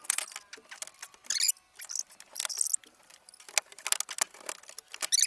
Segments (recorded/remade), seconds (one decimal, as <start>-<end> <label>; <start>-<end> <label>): 0.0-5.3 recorded